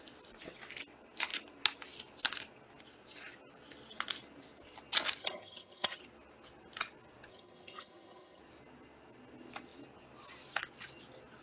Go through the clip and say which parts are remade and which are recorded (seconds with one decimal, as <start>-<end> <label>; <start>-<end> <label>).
0.0-5.2 recorded; 5.2-6.0 remade; 6.0-7.3 recorded; 7.3-8.4 remade; 8.4-11.4 recorded